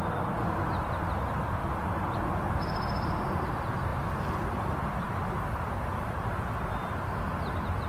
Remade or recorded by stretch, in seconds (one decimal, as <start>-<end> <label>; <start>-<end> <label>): 0.0-7.9 recorded